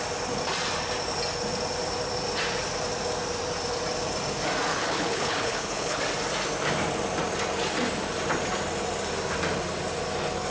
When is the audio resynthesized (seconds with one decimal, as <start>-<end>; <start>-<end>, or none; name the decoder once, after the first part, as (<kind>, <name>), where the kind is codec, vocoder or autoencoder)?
4.7-6.0 (codec, HILCodec)